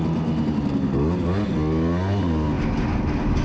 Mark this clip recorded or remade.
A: recorded